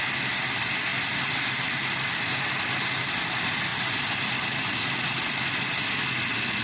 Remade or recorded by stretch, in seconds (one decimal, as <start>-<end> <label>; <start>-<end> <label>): 0.0-6.6 recorded